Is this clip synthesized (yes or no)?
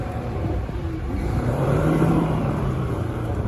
yes